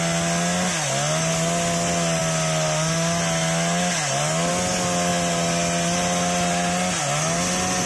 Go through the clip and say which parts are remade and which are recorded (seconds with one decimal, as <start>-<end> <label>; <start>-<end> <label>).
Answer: 0.0-7.9 recorded